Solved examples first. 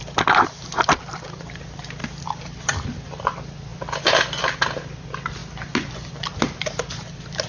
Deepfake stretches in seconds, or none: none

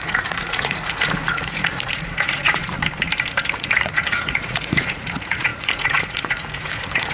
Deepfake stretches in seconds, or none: 0.0-2.6; 3.5-7.1